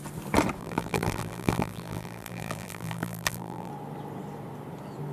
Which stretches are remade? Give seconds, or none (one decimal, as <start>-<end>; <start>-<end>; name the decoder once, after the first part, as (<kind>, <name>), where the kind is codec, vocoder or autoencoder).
0.6-3.7 (vocoder, BigVGAN v2)

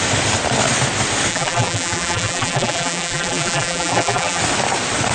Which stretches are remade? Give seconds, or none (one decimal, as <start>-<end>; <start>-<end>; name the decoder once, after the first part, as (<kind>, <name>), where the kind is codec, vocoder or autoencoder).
1.3-4.4 (vocoder, BigVGAN v2)

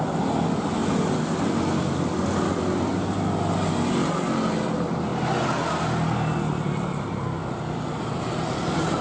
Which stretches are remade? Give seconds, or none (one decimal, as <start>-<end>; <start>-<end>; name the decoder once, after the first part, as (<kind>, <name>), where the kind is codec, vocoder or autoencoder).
none

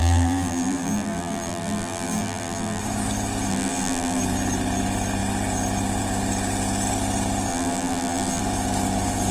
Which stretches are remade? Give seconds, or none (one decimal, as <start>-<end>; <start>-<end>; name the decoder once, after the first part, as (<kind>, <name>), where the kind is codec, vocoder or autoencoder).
0.0-2.8 (vocoder, BigVGAN v2); 3.5-4.2; 7.5-8.4

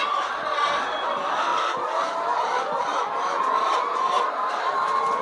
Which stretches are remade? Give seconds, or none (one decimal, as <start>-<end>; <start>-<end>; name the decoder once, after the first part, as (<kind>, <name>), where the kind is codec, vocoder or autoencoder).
0.0-1.5 (vocoder, BigVGAN v2); 4.6-5.2

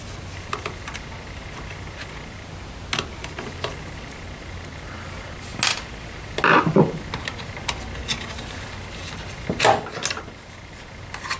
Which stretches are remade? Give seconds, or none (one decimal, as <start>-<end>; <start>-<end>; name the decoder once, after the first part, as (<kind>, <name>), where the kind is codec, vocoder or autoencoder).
none